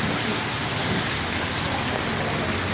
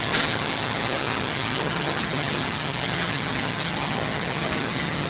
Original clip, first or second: first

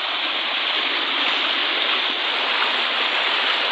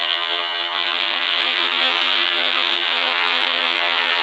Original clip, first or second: first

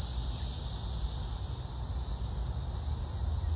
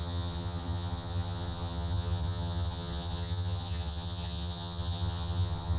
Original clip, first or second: first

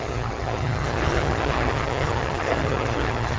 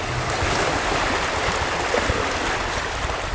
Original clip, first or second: second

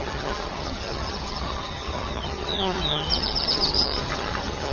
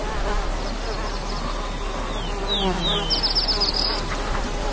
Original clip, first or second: second